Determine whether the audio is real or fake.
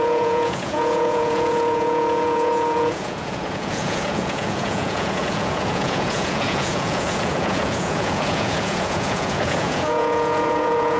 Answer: fake